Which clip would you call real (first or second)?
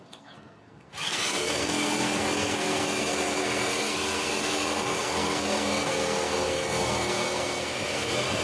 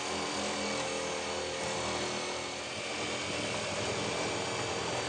second